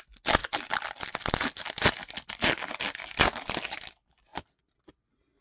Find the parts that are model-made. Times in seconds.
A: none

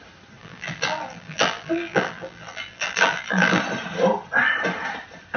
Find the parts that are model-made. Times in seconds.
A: 0.4-3.6

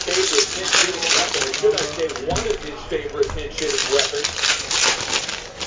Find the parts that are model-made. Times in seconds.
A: none

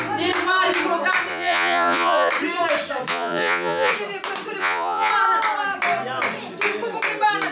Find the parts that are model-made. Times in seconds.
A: 1.3-2.3; 3.1-3.9; 4.6-5.1

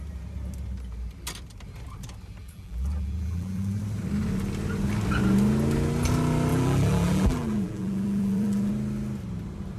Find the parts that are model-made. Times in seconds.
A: 2.4-3.8; 6.5-8.7

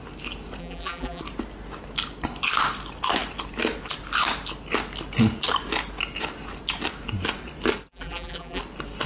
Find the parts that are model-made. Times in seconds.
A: 0.6-1.2; 7.9-8.6